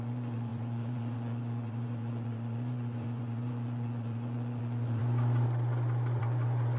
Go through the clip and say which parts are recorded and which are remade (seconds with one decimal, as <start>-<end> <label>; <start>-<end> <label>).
0.0-5.0 remade; 5.0-6.2 recorded; 6.2-6.8 remade

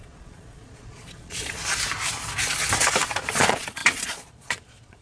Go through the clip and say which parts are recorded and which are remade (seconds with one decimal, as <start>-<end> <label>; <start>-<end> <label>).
0.0-1.6 remade; 1.6-3.3 recorded; 3.3-5.0 remade

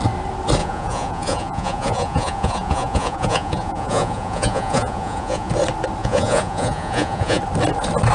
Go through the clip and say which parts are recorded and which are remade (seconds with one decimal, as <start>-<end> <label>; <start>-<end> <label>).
0.0-0.6 recorded; 0.6-5.5 remade; 5.5-6.0 recorded; 6.0-7.4 remade; 7.4-8.1 recorded

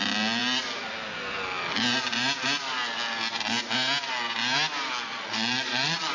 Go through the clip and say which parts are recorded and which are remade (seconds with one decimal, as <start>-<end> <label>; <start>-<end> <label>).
0.0-5.1 recorded; 5.1-6.1 remade

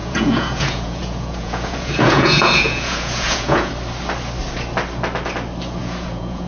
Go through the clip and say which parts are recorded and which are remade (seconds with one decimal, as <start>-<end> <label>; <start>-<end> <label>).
0.0-3.7 remade; 3.7-5.8 recorded; 5.8-6.5 remade

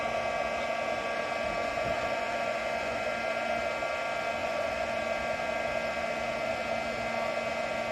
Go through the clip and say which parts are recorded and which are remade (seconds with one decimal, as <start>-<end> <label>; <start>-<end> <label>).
0.0-1.6 recorded; 1.6-3.1 remade; 3.1-4.4 recorded; 4.4-5.0 remade; 5.0-7.9 recorded

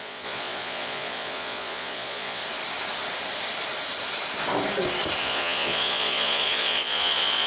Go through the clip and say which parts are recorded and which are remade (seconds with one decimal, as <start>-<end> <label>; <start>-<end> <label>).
0.0-2.4 remade; 2.4-5.2 recorded; 5.2-7.5 remade